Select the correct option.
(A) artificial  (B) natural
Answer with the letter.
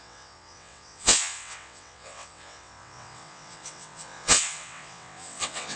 A